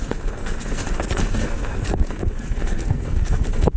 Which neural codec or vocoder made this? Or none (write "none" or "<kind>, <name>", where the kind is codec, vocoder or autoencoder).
codec, SNAC